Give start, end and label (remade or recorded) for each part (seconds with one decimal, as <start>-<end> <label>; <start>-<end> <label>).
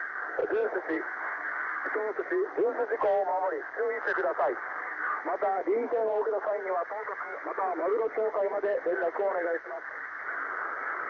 0.0-0.4 recorded; 0.4-2.2 remade; 2.2-5.5 recorded; 5.5-10.2 remade; 10.2-11.1 recorded